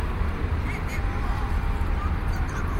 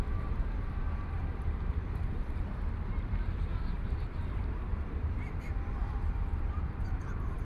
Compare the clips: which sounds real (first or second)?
first